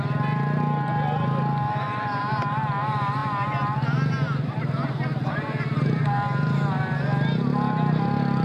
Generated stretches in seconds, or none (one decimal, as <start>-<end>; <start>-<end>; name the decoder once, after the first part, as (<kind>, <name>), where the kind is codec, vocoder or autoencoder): none